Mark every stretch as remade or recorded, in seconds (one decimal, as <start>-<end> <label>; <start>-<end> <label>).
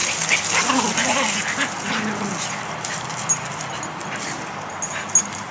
0.0-5.5 recorded